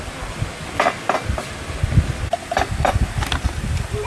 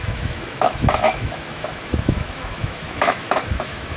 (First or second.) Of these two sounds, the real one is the first